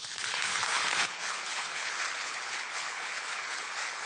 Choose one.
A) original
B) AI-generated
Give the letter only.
B